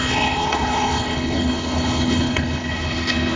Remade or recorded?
remade